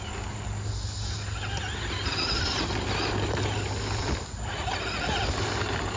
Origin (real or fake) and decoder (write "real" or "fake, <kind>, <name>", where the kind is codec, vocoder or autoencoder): real